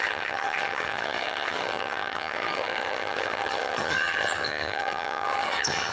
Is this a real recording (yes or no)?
no